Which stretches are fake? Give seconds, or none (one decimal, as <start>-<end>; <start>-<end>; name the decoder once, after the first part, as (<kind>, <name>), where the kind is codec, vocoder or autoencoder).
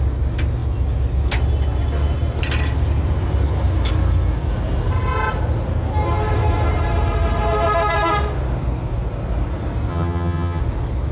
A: 9.9-10.6 (vocoder, HiFi-GAN)